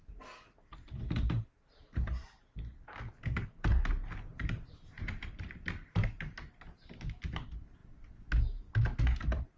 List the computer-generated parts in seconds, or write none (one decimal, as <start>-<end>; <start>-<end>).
1.5-3.1; 4.3-5.5